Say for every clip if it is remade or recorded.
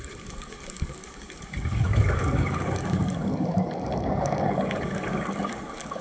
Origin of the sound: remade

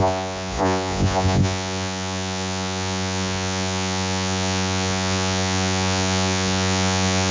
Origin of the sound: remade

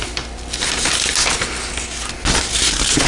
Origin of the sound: recorded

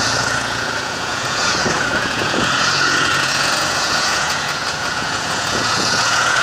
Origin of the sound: remade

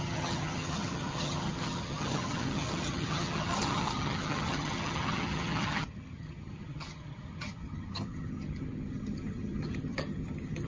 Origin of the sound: remade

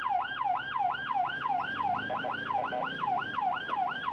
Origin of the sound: recorded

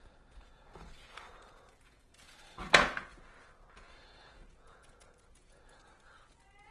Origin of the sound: remade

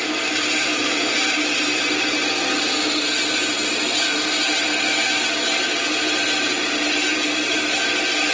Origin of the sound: recorded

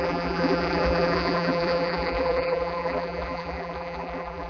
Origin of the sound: remade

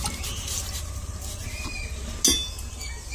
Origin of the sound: recorded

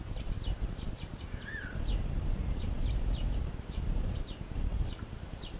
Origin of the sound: remade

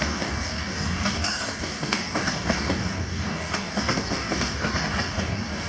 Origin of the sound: remade